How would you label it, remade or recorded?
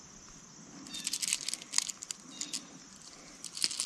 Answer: recorded